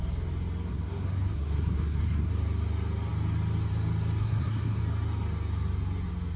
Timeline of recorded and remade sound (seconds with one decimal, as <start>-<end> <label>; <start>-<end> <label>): 0.0-0.7 recorded; 0.7-2.3 remade; 2.3-4.2 recorded; 4.2-4.8 remade; 4.8-6.4 recorded